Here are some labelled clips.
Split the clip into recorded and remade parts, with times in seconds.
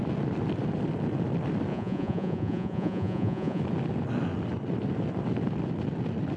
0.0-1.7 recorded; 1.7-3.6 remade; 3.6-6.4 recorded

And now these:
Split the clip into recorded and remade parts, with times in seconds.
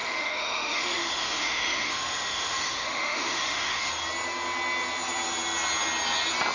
0.0-3.9 remade; 3.9-6.5 recorded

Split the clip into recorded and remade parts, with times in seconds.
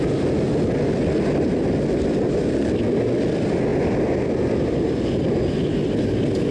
0.0-6.5 recorded